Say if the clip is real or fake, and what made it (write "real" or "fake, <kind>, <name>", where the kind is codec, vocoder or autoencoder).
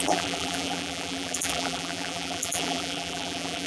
fake, vocoder, BigVGAN v2